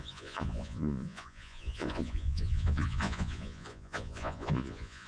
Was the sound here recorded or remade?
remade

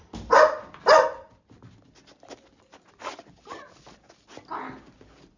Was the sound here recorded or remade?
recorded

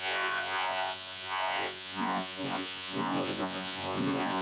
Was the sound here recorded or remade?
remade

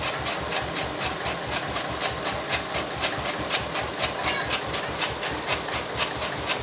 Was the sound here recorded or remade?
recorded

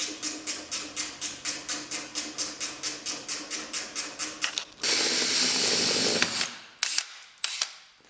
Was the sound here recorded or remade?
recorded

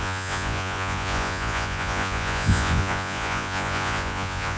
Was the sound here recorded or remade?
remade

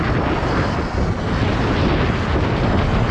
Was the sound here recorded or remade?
recorded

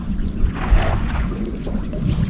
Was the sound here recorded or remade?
remade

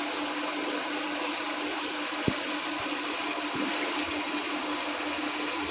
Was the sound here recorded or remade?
recorded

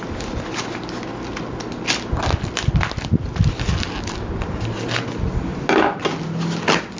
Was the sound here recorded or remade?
recorded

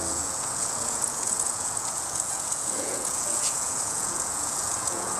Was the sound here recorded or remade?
remade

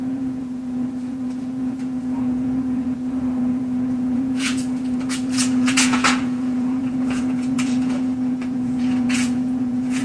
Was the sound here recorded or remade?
remade